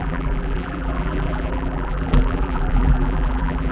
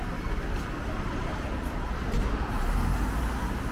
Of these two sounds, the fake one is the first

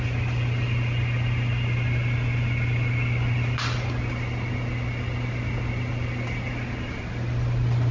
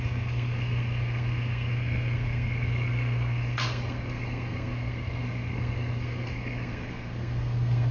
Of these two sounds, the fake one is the second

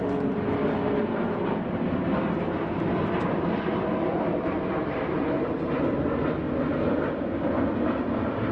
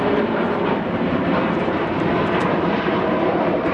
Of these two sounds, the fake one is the second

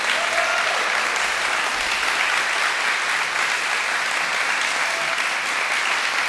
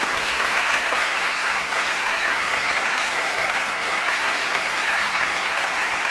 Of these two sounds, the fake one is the second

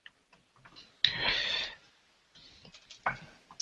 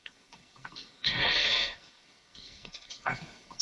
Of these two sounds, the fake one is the second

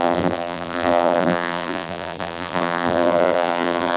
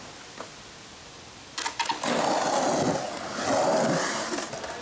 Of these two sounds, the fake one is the first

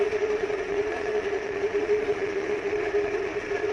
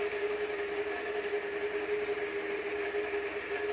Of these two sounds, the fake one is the first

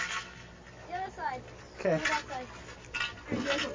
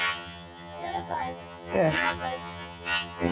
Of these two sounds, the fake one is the second